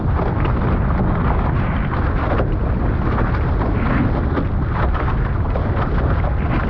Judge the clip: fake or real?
real